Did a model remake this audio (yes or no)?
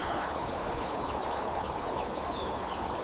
yes